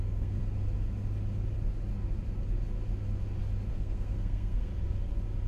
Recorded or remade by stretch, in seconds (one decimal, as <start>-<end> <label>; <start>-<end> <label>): 0.0-0.4 remade; 0.4-3.7 recorded; 3.7-4.7 remade; 4.7-5.5 recorded